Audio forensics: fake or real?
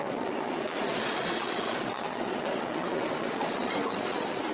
fake